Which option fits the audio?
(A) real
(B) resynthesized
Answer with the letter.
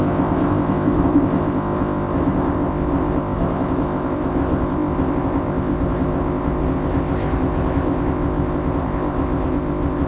B